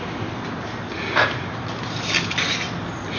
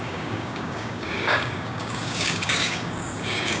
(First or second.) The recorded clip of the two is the first